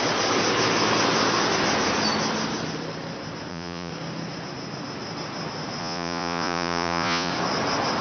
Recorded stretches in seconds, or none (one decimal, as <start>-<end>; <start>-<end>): 0.0-3.5; 3.9-5.8; 7.3-8.0